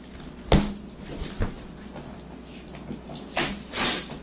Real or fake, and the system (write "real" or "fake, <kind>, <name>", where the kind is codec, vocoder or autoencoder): real